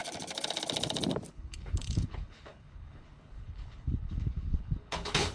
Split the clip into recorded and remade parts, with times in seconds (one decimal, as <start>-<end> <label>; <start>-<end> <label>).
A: 0.0-1.3 recorded; 1.3-5.3 remade